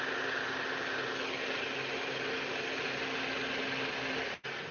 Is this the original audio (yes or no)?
yes